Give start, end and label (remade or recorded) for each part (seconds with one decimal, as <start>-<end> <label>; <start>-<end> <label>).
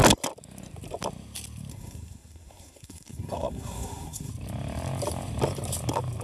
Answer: 0.0-1.7 recorded; 1.7-4.3 remade; 4.3-6.2 recorded